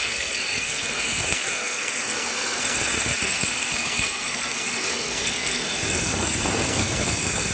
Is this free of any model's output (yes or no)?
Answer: no